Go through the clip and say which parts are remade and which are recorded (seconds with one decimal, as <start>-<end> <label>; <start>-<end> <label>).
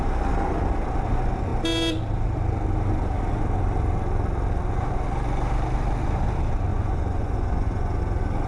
0.0-6.7 recorded; 6.7-8.0 remade; 8.0-8.5 recorded